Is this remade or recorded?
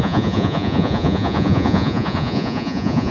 remade